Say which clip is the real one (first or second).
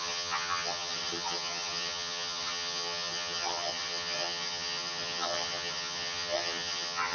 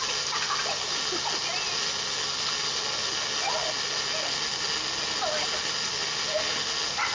second